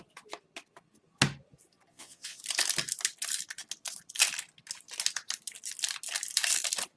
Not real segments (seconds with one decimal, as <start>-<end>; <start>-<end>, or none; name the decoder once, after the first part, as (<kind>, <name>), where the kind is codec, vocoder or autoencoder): 1.9-2.4 (vocoder, Vocos)